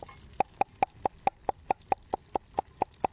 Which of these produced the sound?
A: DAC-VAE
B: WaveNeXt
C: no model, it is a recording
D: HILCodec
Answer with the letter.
C